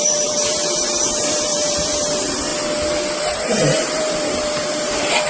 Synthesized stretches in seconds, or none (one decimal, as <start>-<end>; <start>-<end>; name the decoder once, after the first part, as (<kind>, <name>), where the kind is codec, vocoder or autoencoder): 0.0-2.5 (vocoder, BigVGAN v2); 3.2-5.3